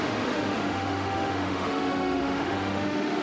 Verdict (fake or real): fake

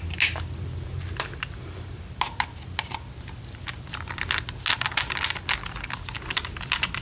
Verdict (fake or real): real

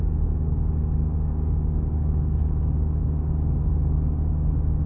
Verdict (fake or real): fake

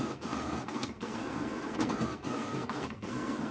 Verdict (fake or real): fake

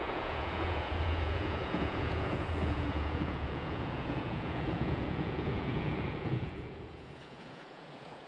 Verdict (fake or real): fake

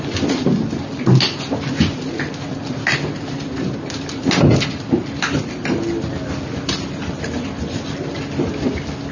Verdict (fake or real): real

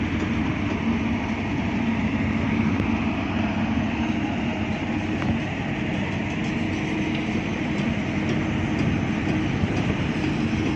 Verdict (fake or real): real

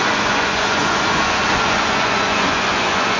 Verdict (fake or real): fake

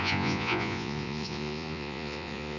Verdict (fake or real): fake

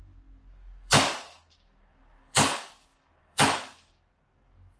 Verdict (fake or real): fake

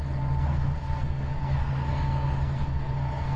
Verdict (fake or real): fake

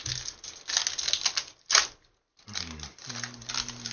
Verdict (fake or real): real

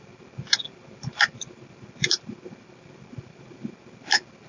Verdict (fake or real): real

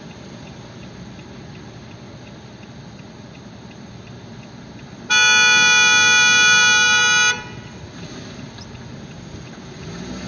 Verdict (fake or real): real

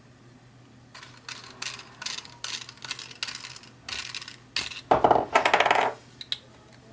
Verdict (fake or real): real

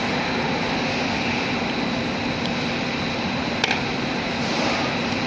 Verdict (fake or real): real